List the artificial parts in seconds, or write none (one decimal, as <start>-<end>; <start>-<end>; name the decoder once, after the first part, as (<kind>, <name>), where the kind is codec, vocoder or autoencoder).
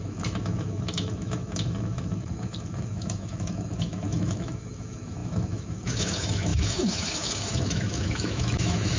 0.0-9.0 (autoencoder, DAC-VAE)